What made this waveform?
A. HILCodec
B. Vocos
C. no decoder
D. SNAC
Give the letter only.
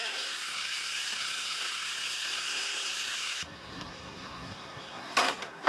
D